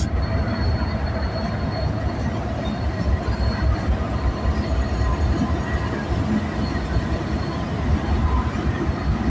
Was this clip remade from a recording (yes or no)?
no